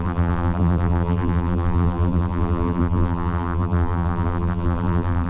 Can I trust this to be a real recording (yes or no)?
no